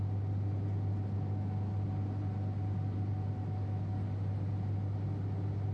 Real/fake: real